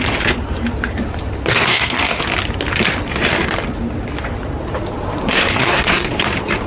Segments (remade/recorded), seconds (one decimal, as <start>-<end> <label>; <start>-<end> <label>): 0.0-1.5 recorded; 1.5-2.2 remade; 2.2-5.2 recorded; 5.2-6.2 remade; 6.2-6.7 recorded